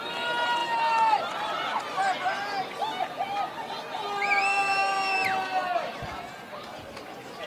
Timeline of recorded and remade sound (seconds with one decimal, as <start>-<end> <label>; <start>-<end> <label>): 0.0-7.5 recorded